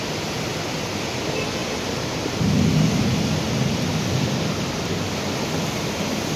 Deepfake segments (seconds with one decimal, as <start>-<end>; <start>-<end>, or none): none